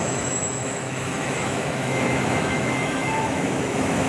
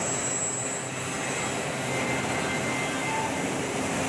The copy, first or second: first